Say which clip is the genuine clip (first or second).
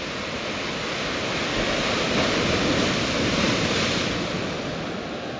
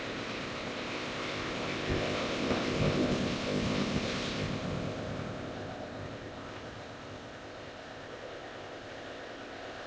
first